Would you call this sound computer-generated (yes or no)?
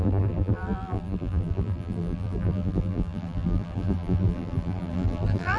yes